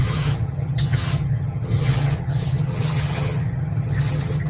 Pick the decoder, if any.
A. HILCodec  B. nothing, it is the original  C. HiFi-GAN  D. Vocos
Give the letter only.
C